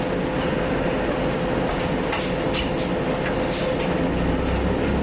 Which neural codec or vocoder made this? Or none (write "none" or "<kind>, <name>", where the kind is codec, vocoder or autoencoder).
none